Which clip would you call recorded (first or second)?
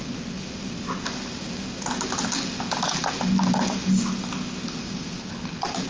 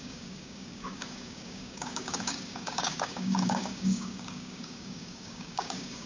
first